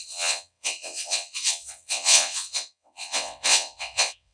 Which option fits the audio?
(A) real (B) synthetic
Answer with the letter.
B